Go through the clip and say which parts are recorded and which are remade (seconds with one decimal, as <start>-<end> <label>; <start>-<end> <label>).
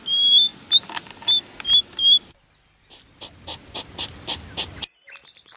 0.0-5.6 recorded